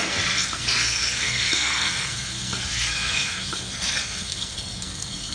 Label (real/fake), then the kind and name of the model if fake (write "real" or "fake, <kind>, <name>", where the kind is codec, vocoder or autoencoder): fake, codec, SNAC